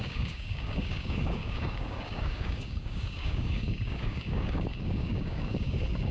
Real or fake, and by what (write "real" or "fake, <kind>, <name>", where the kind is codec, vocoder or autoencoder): fake, codec, DAC